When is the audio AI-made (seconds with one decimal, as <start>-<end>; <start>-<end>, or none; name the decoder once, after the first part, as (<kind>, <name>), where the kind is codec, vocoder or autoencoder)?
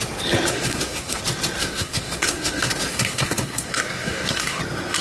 0.5-1.2 (codec, SNAC); 1.6-4.6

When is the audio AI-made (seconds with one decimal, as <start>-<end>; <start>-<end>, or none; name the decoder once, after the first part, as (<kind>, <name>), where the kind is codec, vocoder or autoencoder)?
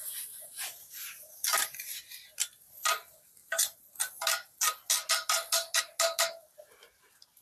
0.0-2.0 (vocoder, BigVGAN v2); 3.4-3.9